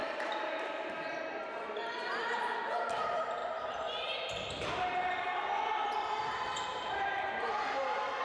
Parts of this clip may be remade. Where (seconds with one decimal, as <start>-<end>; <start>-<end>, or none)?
0.0-3.0; 3.4-8.2